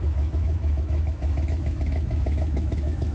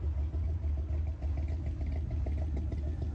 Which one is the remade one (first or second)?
first